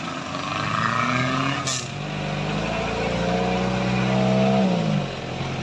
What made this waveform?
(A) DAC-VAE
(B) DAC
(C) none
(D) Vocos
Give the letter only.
C